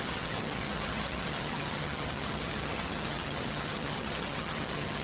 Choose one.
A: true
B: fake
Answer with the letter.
B